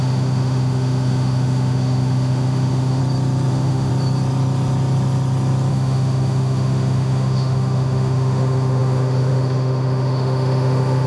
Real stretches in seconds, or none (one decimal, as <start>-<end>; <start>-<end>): 3.0-3.5; 3.9-5.7